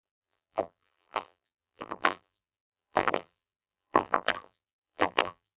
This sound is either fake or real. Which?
fake